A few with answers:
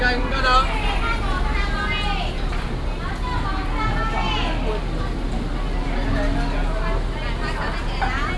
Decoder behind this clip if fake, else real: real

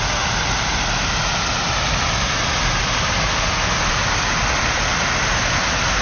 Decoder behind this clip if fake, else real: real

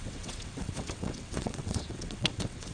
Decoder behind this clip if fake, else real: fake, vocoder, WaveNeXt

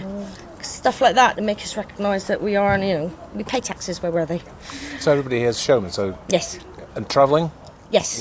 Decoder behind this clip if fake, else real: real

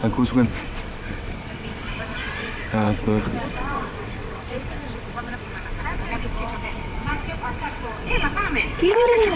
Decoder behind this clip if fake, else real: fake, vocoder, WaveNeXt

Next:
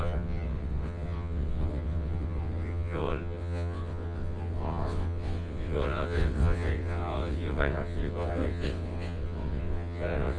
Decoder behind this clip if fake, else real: fake, vocoder, WaveNeXt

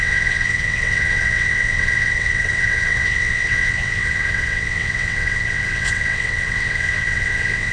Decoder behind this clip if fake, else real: fake, vocoder, WaveNeXt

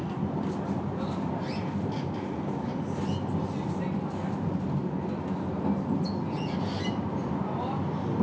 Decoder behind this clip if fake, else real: real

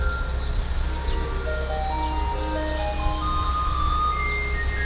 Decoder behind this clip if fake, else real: real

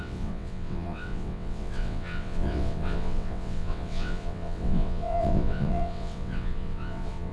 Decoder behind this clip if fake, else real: fake, vocoder, WaveNeXt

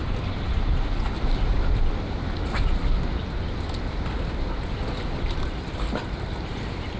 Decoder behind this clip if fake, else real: real